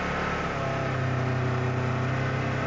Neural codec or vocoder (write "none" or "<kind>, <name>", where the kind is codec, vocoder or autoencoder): none